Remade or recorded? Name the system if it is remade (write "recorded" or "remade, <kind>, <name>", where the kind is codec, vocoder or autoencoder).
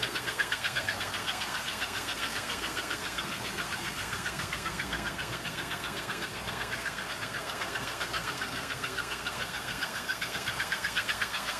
remade, codec, SNAC